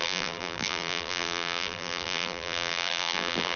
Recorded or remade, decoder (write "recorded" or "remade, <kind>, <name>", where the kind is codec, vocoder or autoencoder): remade, vocoder, BigVGAN v2